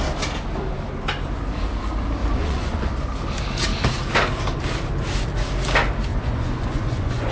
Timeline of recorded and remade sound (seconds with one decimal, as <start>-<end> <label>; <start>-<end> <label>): 0.0-2.2 recorded; 2.2-2.9 remade; 2.9-6.1 recorded; 6.1-7.3 remade